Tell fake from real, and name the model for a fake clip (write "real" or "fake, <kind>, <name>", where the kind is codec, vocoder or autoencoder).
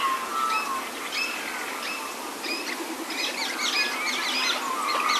real